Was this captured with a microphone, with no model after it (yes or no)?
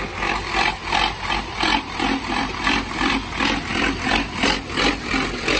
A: yes